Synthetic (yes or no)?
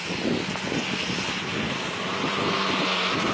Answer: no